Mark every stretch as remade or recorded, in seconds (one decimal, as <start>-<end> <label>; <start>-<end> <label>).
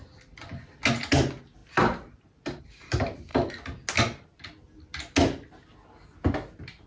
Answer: 0.0-6.9 recorded